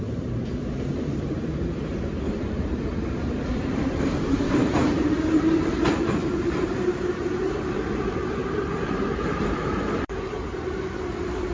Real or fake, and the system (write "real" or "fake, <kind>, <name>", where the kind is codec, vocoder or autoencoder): fake, vocoder, BigVGAN v2